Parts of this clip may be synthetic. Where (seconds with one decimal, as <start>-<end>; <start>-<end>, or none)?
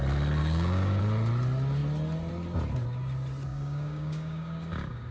0.4-1.0; 3.5-5.1